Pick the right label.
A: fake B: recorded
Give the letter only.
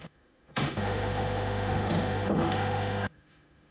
A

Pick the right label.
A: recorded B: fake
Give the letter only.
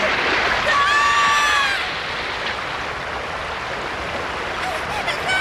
A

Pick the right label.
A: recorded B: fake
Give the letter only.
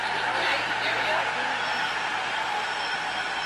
A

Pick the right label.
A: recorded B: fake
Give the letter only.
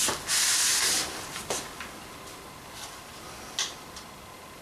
A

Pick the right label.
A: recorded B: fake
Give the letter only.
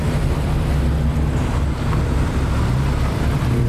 A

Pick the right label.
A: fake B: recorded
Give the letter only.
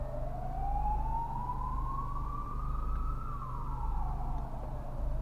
B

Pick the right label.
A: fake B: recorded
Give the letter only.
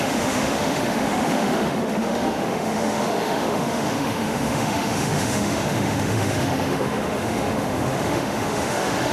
A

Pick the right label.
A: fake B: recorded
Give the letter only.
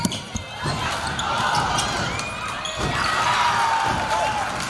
B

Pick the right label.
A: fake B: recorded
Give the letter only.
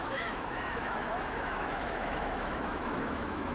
A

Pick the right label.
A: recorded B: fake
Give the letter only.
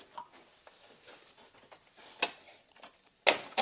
A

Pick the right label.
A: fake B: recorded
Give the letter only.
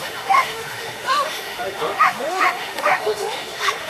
A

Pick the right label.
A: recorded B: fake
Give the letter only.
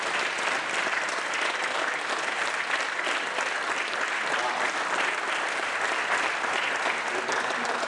A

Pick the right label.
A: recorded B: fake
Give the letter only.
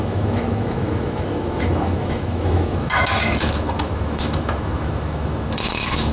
B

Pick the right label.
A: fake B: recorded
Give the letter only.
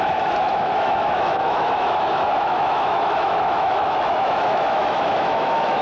A